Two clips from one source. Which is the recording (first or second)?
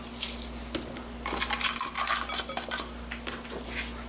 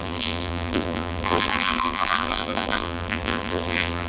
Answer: first